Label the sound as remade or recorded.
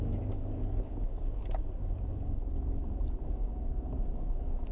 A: remade